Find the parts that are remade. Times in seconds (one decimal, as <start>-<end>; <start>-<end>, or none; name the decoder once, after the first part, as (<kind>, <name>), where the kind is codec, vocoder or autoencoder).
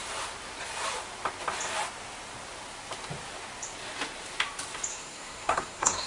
4.9-6.1 (codec, SNAC)